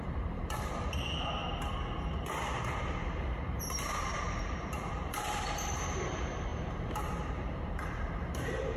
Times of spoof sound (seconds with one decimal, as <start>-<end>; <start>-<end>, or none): 0.0-1.4; 3.0-8.8